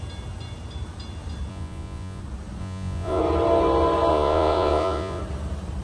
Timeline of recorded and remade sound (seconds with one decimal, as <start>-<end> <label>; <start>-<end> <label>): 0.0-1.5 recorded; 1.5-2.2 remade; 2.2-2.6 recorded; 2.6-3.2 remade; 3.2-4.1 recorded; 4.1-5.2 remade; 5.2-5.8 recorded